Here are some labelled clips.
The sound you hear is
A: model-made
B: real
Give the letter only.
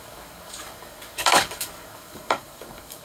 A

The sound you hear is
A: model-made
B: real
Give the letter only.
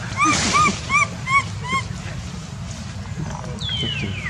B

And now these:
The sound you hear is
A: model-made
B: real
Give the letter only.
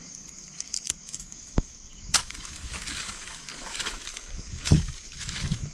A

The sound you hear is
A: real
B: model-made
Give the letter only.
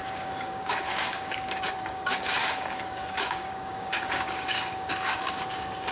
B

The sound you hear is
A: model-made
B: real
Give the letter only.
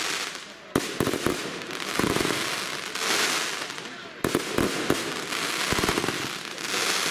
B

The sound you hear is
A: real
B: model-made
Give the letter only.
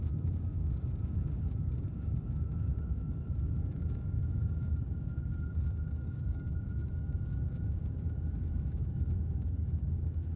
B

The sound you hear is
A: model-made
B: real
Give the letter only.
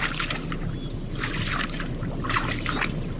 B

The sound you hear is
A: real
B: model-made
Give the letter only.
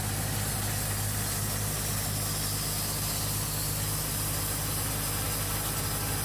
A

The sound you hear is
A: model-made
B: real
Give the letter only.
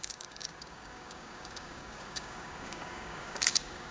A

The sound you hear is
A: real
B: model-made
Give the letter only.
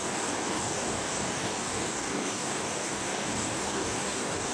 B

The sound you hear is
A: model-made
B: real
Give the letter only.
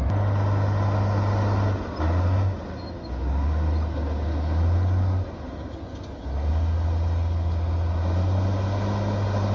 B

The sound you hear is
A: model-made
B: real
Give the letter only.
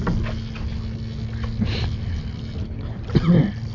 B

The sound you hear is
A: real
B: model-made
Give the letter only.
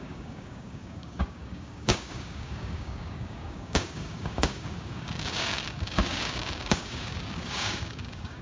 B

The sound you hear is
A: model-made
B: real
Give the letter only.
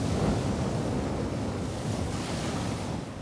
A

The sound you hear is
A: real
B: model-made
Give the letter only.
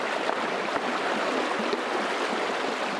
A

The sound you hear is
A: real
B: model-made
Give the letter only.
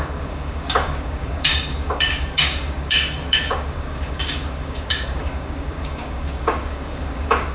B